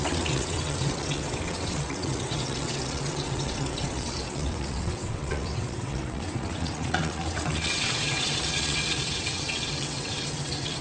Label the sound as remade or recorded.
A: remade